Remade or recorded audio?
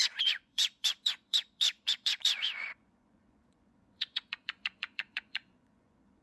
remade